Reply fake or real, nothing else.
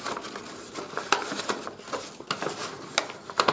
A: real